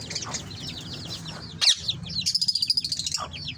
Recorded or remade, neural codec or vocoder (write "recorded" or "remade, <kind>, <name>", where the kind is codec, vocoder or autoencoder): recorded